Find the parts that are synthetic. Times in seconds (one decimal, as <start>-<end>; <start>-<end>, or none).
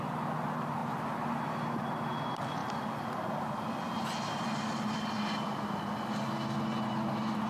none